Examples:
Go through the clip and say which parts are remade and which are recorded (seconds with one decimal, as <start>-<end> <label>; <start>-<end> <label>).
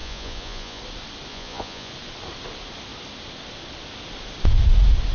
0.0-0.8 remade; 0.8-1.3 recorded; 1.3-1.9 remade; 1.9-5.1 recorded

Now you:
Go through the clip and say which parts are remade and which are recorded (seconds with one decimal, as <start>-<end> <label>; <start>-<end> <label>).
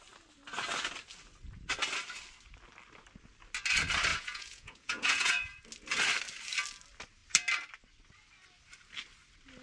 0.0-4.1 recorded; 4.1-5.6 remade; 5.6-9.6 recorded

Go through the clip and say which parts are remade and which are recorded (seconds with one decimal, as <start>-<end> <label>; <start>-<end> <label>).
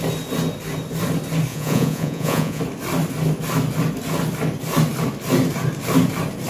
0.0-1.5 recorded; 1.5-2.6 remade; 2.6-6.5 recorded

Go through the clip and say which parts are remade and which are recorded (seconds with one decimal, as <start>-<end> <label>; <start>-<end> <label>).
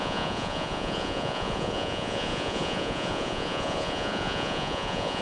0.0-5.2 remade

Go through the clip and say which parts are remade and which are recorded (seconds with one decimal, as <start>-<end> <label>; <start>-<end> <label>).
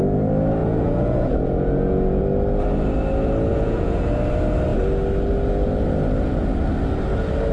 0.0-0.6 recorded; 0.6-2.2 remade; 2.2-3.5 recorded; 3.5-4.1 remade; 4.1-7.5 recorded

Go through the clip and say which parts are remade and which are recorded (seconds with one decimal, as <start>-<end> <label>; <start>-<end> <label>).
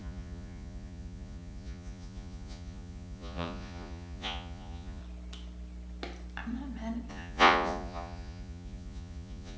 0.0-5.0 remade; 5.0-7.1 recorded; 7.1-9.6 remade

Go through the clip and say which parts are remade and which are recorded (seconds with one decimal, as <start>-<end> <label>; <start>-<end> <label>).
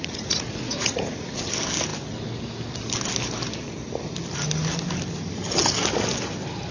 0.0-1.5 remade; 1.5-6.7 recorded